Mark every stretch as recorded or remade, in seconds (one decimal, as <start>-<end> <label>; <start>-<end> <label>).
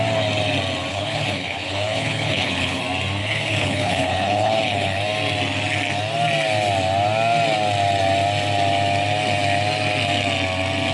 0.0-0.9 recorded; 0.9-2.8 remade; 2.8-3.2 recorded; 3.2-5.0 remade; 5.0-10.9 recorded